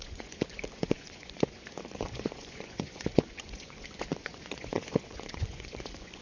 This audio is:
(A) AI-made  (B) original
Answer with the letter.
A